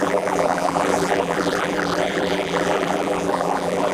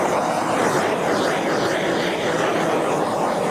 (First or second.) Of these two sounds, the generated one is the first